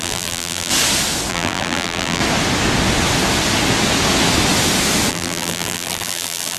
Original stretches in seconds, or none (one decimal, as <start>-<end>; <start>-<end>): 0.7-1.3; 2.2-5.1